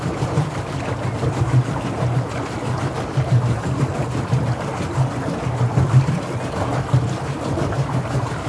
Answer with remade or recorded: recorded